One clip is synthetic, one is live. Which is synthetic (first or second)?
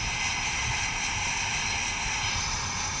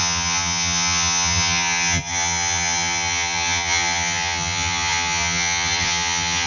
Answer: second